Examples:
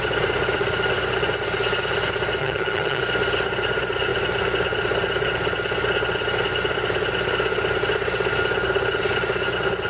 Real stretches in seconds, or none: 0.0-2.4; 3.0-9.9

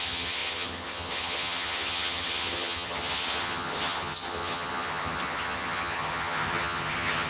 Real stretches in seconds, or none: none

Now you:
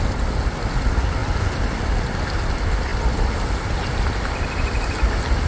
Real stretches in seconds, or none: 0.0-5.5